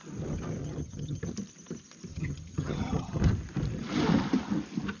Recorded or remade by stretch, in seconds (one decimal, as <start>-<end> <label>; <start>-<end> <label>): 0.0-0.6 recorded; 0.6-1.2 remade; 1.2-2.1 recorded; 2.1-3.2 remade; 3.2-5.0 recorded